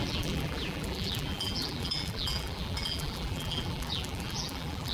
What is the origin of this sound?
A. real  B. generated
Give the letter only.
B